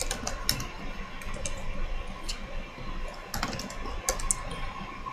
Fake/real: real